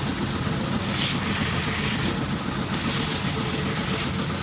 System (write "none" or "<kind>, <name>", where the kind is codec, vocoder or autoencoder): none